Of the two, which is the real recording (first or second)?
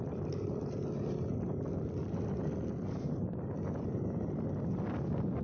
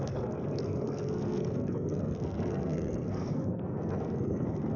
first